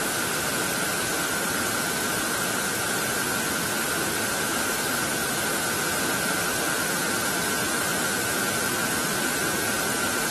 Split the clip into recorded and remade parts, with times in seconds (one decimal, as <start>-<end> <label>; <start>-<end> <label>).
0.0-10.3 recorded